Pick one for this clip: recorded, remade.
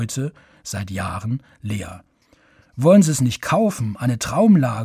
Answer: recorded